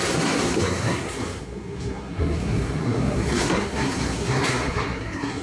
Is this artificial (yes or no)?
yes